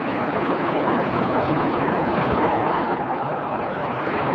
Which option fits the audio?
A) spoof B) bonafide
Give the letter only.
A